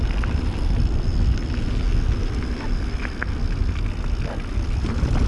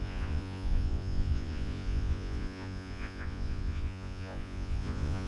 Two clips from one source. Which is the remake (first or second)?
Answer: second